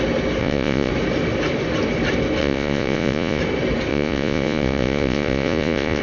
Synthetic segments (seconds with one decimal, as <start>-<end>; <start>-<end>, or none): 0.4-0.9; 2.4-3.4; 3.9-6.0